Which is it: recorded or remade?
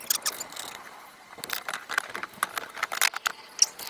recorded